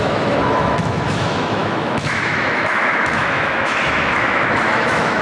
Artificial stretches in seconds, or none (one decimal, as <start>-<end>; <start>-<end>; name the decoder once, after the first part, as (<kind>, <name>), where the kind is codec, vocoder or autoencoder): 0.0-5.2 (autoencoder, DAC-VAE)